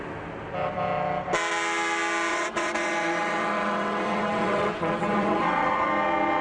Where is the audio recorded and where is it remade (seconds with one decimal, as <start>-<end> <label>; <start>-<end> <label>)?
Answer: 0.0-2.3 recorded; 2.3-5.9 remade; 5.9-6.4 recorded